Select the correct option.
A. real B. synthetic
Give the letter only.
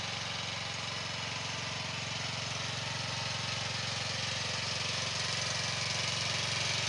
A